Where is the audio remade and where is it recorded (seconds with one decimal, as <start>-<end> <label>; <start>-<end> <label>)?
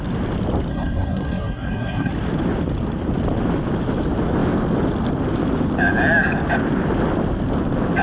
0.0-0.7 recorded; 0.7-2.1 remade; 2.1-8.0 recorded